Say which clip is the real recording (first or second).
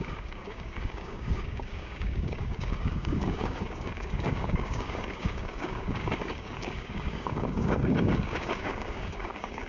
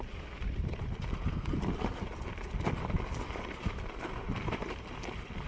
second